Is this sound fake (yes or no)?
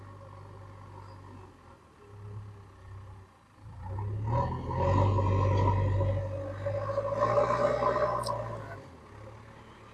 no